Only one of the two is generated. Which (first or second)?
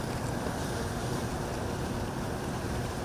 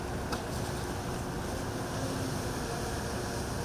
first